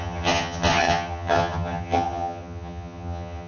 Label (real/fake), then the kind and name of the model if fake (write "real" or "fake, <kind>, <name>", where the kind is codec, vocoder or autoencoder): fake, vocoder, HiFi-GAN